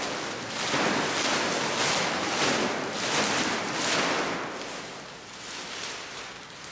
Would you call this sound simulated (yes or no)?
no